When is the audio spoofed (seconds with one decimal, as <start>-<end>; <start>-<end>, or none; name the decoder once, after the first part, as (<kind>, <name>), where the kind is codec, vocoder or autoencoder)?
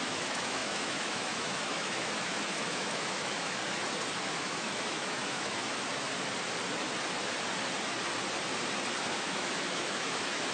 0.0-3.6 (autoencoder, DAC-VAE); 4.2-5.6; 9.0-10.5